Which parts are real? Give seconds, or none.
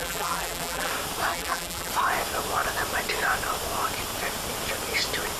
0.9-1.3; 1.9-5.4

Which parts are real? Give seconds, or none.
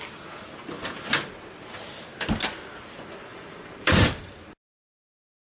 0.0-3.3; 4.3-5.5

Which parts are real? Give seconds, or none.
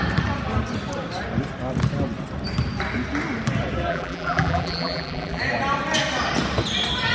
0.0-3.9; 5.4-7.1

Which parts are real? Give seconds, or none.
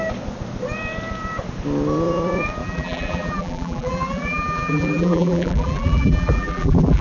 0.0-2.6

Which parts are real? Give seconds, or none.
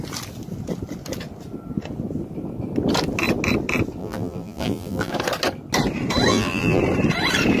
0.0-4.0; 5.1-6.3; 6.8-7.6